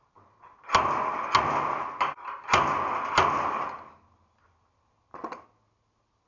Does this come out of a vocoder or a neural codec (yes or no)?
no